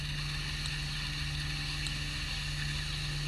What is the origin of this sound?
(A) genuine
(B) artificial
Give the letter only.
A